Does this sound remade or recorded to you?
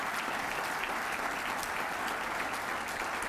recorded